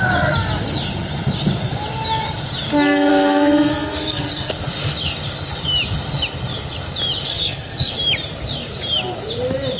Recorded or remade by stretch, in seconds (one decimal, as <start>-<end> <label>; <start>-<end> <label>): 0.0-3.1 recorded; 3.1-4.5 remade; 4.5-7.3 recorded; 7.3-7.9 remade; 7.9-9.8 recorded